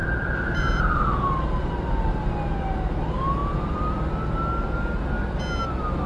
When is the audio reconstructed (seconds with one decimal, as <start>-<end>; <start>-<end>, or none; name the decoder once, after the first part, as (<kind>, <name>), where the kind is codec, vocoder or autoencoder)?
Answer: 0.0-1.0 (vocoder, BigVGAN v2); 3.4-4.1